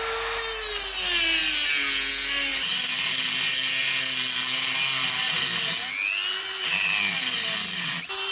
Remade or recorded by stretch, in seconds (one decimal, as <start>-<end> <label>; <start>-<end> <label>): 0.0-8.3 recorded